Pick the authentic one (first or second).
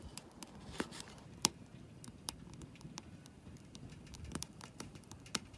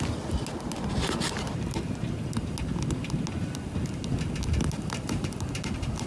second